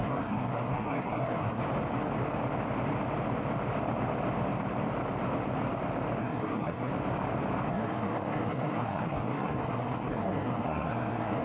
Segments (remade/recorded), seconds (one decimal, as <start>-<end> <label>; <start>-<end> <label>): 0.0-1.6 remade; 1.6-6.2 recorded; 6.2-6.9 remade; 6.9-7.7 recorded; 7.7-11.4 remade